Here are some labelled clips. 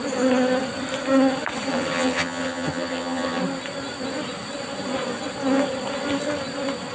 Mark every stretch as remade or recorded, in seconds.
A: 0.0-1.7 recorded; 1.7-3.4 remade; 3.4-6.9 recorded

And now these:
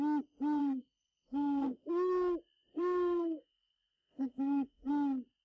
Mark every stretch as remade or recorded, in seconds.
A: 0.0-0.6 recorded; 0.6-1.9 remade; 1.9-2.7 recorded; 2.7-4.9 remade; 4.9-5.4 recorded